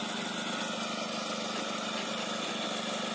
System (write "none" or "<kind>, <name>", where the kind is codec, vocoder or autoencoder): none